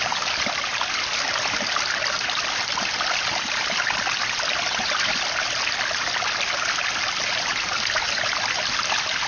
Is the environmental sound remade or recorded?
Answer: recorded